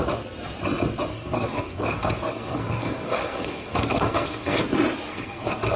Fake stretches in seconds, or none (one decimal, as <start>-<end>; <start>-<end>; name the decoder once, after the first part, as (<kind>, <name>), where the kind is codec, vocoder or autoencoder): 1.1-4.6 (codec, SNAC); 5.1-5.8